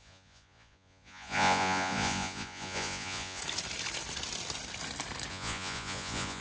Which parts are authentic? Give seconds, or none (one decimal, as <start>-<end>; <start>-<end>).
3.4-5.3